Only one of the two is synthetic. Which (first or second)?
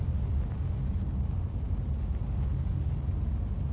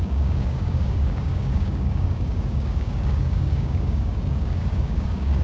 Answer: second